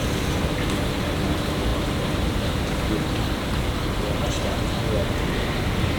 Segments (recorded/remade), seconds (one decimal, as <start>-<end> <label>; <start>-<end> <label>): 0.0-6.0 recorded